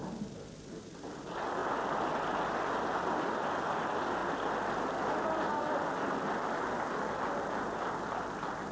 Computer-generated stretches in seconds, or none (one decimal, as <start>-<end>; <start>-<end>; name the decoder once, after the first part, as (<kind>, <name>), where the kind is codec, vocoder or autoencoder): none